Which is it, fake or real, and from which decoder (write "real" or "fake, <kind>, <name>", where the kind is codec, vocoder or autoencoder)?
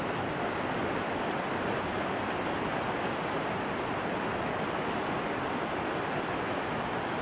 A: real